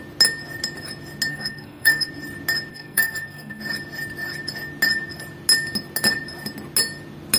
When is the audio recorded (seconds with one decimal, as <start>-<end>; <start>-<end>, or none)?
0.0-1.3; 2.1-2.7; 3.6-7.4